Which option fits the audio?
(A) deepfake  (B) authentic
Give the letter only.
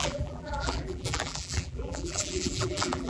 A